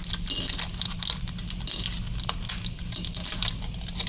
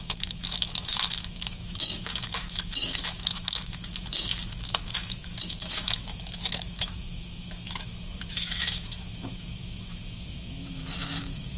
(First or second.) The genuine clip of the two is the first